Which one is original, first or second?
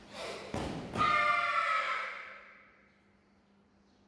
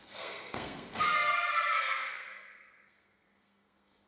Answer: first